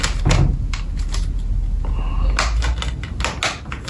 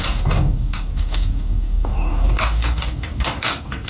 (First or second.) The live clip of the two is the first